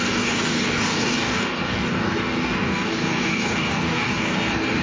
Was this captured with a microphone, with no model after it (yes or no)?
no